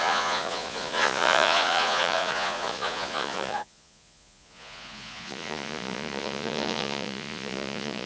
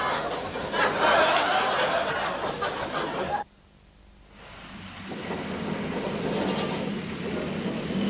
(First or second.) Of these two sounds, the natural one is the second